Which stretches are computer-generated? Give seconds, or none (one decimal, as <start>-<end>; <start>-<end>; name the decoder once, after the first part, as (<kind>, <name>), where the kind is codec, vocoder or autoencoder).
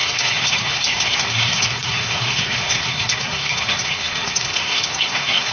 0.0-5.5 (codec, SNAC)